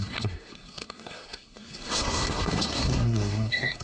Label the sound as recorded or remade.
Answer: remade